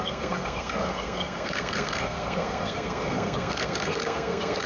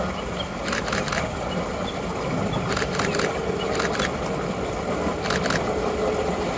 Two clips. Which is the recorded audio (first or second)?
second